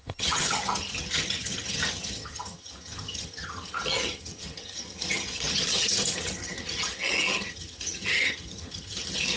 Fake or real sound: fake